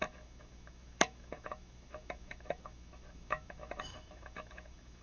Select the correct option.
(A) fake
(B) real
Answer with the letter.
A